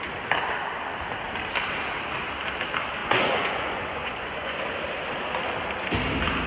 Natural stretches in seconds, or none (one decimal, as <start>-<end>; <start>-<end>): 0.0-3.0; 4.6-6.5